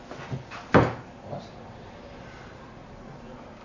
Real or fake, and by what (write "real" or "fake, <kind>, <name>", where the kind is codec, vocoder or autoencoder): real